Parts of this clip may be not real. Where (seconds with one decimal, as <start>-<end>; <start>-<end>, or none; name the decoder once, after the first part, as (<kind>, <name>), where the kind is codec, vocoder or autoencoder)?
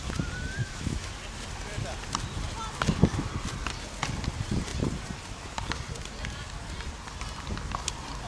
0.6-1.1 (autoencoder, DAC-VAE)